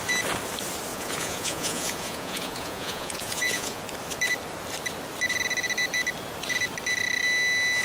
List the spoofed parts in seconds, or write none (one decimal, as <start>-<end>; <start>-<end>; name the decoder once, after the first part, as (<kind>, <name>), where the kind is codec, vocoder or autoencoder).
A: 0.9-3.8 (vocoder, Vocos)